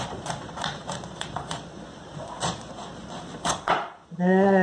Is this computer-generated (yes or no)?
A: yes